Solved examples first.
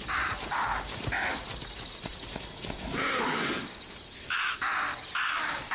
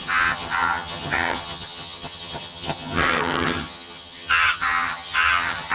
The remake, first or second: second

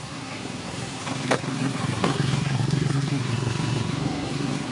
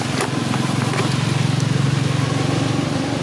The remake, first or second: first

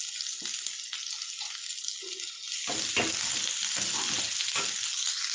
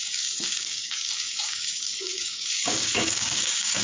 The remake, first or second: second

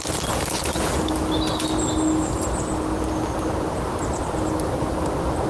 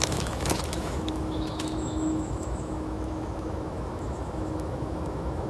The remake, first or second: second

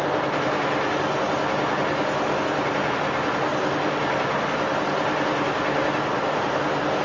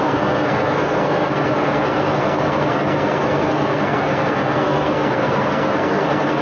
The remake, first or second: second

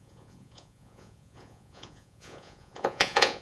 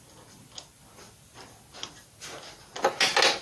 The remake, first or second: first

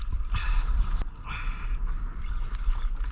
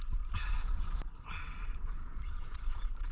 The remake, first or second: second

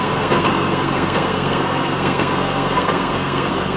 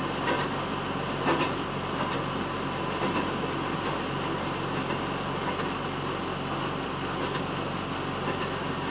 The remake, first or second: first